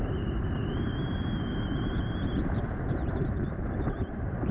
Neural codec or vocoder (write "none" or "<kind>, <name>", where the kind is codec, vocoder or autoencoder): vocoder, BigVGAN v2